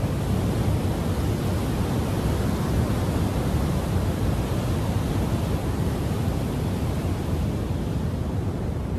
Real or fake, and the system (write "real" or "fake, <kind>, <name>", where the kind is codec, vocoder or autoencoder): real